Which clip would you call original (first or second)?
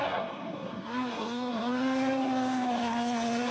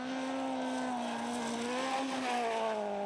second